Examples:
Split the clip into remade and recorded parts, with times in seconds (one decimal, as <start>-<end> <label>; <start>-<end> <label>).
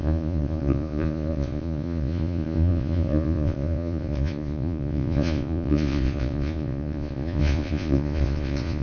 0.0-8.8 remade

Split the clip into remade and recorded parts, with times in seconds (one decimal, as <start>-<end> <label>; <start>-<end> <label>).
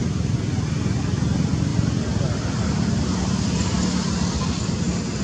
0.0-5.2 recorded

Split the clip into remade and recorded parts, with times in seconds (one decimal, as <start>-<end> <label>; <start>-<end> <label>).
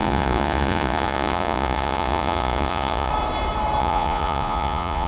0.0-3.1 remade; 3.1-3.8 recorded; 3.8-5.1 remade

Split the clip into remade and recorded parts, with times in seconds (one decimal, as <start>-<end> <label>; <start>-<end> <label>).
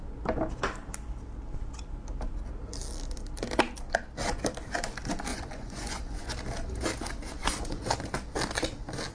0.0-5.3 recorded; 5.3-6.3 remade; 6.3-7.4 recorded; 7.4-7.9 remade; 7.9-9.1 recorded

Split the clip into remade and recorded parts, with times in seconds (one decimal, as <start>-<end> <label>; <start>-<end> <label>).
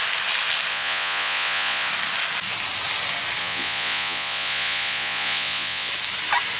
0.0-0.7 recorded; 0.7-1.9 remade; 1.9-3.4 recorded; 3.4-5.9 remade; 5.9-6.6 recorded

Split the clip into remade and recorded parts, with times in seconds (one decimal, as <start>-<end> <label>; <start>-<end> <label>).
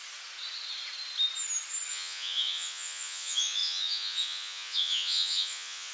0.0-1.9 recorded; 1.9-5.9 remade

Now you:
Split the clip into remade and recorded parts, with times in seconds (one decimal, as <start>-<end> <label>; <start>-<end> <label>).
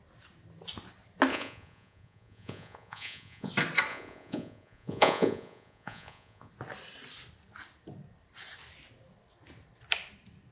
0.0-1.3 recorded; 1.3-3.5 remade; 3.5-3.9 recorded; 3.9-6.5 remade; 6.5-10.5 recorded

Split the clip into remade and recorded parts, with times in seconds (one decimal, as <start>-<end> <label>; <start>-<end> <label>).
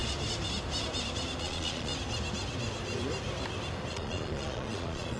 0.0-1.4 recorded; 1.4-1.9 remade; 1.9-3.9 recorded; 3.9-5.2 remade